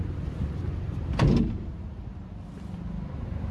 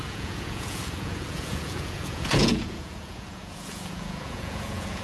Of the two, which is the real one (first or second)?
first